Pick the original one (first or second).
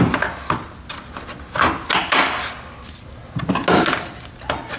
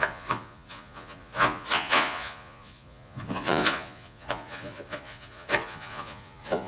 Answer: first